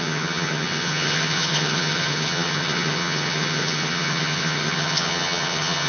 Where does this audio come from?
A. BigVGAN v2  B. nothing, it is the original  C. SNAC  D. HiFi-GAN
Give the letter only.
D